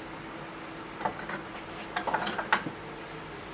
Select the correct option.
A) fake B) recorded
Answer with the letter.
B